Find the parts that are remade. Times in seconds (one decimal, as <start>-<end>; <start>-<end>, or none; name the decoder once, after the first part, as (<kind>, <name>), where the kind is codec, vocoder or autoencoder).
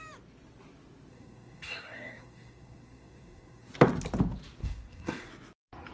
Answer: 1.1-3.7 (codec, SNAC); 4.6-5.3